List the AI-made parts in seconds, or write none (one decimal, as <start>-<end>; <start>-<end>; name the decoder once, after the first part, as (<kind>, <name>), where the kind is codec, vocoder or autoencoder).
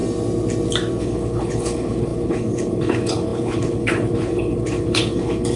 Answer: 1.0-5.6 (codec, HILCodec)